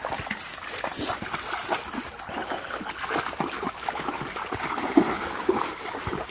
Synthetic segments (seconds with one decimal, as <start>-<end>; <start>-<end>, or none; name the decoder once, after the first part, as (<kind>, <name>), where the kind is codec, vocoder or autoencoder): none